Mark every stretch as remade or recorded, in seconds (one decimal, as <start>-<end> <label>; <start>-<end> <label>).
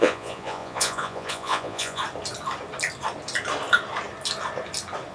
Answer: 0.0-2.0 remade; 2.0-5.1 recorded